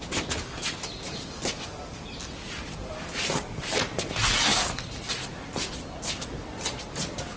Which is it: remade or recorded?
recorded